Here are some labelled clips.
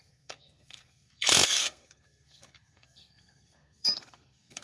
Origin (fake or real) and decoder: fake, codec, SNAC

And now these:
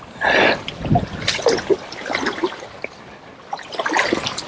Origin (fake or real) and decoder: real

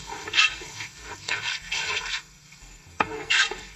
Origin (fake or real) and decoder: fake, codec, SNAC